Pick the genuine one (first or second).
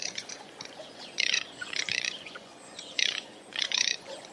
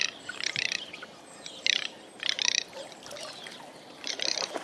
second